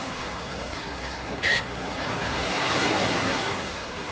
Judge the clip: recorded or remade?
remade